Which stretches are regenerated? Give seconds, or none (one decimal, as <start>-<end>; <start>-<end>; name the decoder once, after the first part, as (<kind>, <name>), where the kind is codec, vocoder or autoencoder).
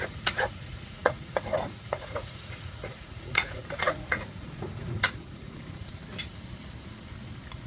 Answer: 0.0-6.0 (vocoder, Vocos)